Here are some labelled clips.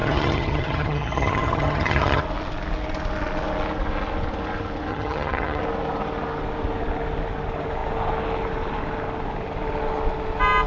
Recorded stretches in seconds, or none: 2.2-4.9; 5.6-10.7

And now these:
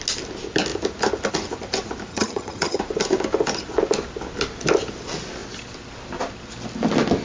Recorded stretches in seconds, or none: 0.0-2.1; 2.8-7.2

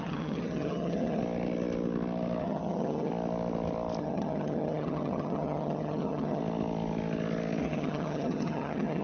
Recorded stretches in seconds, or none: 1.2-2.4; 3.1-4.0; 6.4-7.6

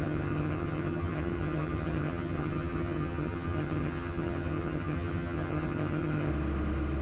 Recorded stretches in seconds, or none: 6.3-7.0

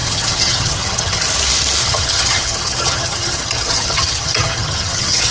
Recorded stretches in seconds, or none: 1.2-1.8

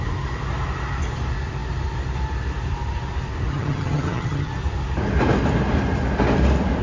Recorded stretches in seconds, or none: 0.0-3.5; 4.5-6.8

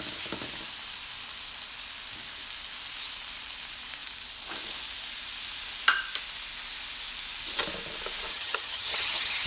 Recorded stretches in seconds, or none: 0.0-8.3